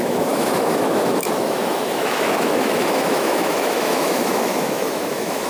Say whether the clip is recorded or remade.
remade